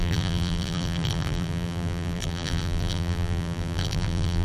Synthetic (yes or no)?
yes